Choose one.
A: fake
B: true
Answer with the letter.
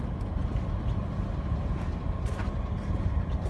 B